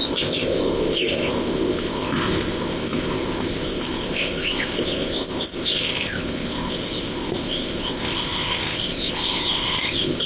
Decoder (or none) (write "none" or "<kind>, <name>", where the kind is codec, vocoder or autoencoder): codec, ZipCodec